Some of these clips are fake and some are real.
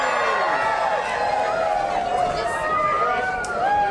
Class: real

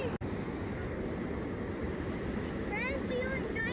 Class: real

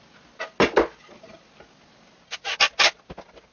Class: real